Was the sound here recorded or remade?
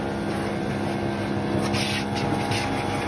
recorded